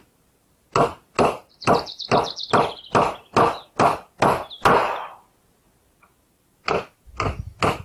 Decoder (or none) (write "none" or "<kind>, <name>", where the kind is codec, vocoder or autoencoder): none